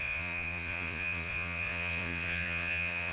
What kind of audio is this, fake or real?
fake